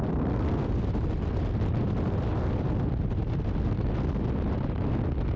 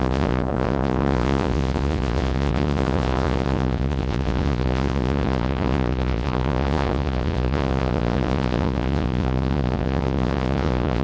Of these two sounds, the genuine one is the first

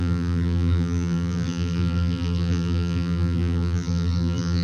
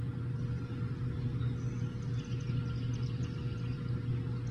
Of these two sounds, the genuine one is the second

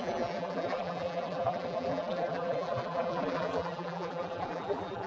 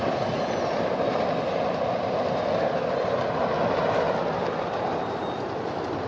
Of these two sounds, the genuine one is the second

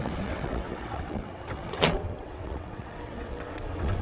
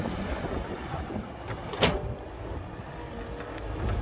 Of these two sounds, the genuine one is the second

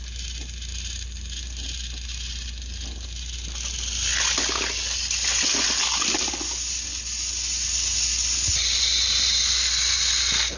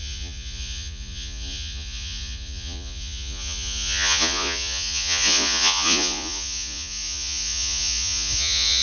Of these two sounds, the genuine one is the first